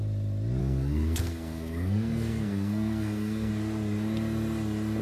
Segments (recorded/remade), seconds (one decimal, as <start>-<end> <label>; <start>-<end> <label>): 0.0-0.6 recorded; 0.6-3.5 remade; 3.5-5.0 recorded